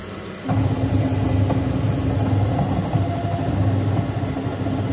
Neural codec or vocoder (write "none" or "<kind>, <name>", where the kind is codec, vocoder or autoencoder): none